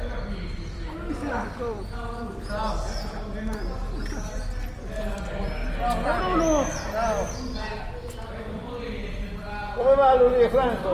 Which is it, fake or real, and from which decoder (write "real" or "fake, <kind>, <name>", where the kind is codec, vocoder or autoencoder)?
real